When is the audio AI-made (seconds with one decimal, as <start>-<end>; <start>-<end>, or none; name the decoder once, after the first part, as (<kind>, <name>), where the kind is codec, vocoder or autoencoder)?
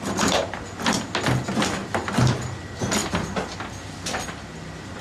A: 1.8-2.4 (vocoder, BigVGAN v2); 3.0-5.0